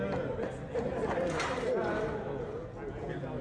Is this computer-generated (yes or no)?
no